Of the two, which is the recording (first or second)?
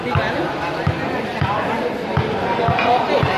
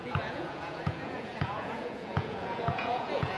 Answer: first